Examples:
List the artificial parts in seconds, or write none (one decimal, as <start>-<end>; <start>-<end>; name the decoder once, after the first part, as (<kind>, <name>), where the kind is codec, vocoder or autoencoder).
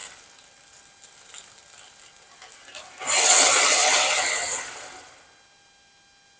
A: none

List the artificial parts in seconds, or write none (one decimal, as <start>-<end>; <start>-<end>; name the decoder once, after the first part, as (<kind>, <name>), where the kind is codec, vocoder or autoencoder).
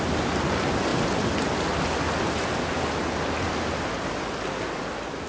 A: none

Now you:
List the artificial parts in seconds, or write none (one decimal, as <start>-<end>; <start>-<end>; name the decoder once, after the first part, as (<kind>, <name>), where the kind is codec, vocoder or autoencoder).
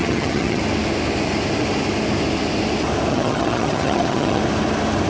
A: 0.0-0.6 (vocoder, HiFi-GAN); 3.1-4.4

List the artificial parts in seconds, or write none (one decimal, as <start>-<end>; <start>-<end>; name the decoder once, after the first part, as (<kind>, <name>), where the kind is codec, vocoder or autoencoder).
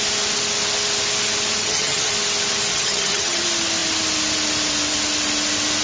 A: 1.6-2.1 (vocoder, HiFi-GAN); 2.7-3.4